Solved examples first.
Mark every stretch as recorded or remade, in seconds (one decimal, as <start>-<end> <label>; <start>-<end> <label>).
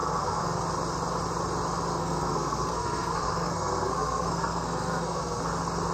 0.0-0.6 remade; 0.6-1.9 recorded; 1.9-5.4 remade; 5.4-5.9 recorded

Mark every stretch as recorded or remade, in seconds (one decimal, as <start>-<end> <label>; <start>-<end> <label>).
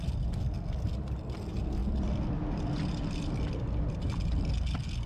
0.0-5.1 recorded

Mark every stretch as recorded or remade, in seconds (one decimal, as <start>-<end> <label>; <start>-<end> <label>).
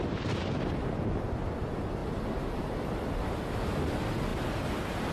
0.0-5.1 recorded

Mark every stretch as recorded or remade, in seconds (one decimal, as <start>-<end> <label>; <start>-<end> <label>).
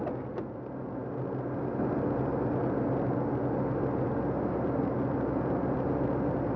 0.0-6.6 recorded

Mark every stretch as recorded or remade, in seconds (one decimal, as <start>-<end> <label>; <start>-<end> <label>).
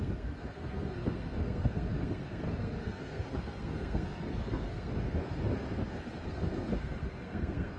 0.0-7.8 remade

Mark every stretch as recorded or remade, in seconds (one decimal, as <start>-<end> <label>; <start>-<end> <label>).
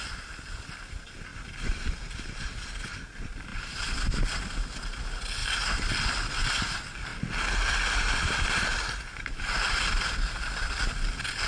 0.0-11.5 recorded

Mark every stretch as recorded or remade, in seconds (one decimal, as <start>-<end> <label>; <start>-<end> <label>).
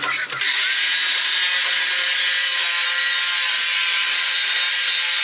0.0-5.2 recorded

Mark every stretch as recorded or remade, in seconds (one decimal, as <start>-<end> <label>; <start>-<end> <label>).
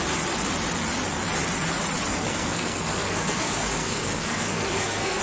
0.0-2.1 recorded; 2.1-5.2 remade